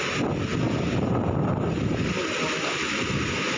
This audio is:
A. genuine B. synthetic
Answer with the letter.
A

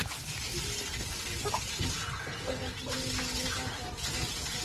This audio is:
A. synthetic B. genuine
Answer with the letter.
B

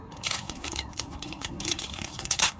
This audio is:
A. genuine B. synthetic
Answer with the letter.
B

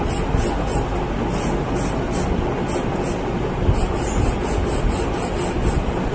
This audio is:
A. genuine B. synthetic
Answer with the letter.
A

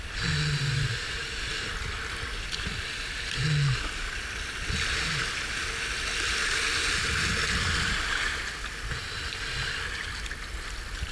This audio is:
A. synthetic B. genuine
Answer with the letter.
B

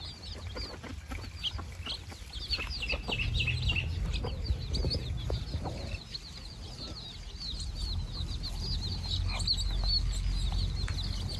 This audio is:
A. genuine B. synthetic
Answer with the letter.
A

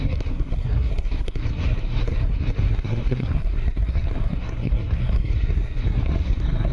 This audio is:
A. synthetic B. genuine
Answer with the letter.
A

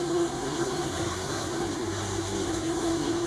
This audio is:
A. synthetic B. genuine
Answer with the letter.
A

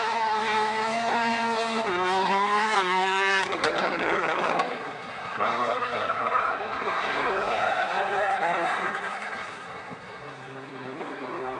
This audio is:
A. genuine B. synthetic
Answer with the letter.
B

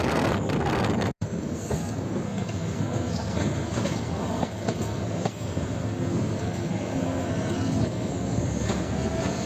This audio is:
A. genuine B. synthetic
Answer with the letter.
B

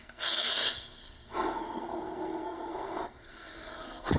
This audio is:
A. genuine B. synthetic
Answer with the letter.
B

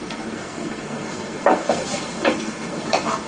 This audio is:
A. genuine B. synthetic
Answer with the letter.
B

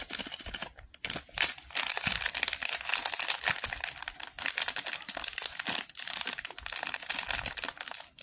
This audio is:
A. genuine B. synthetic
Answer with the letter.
A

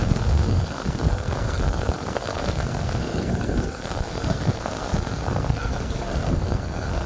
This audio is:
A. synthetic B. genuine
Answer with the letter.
A